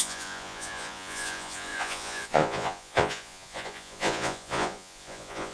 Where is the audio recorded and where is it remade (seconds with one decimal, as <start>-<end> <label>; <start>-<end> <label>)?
0.0-5.5 remade